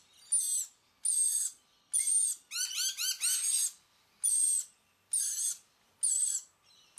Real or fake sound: real